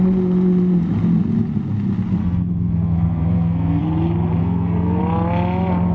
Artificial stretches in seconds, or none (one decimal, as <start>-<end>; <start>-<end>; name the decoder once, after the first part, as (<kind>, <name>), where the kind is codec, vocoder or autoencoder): 2.2-3.8 (codec, SNAC); 4.4-5.0